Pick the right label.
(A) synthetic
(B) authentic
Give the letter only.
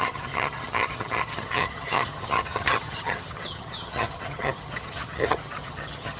A